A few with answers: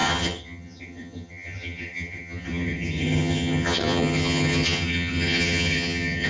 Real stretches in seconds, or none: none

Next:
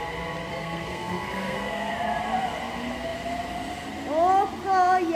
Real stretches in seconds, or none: 0.0-0.5; 1.9-5.2

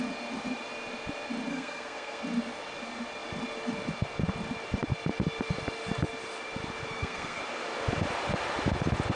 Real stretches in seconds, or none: 0.0-1.5; 2.2-6.9; 7.4-9.2

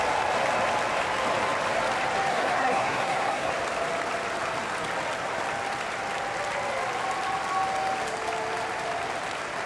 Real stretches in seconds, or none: 0.0-2.3; 3.5-9.7

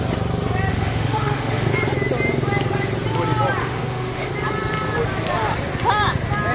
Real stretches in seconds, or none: 0.0-0.7; 1.7-3.6; 4.3-6.5

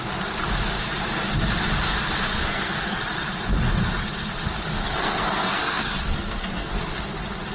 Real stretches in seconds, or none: 0.0-2.4; 3.0-4.8; 6.7-7.5

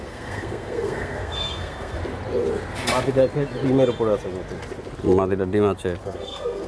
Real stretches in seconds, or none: 2.0-6.0